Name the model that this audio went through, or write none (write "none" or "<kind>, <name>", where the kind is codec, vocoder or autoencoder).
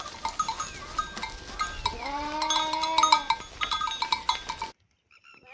none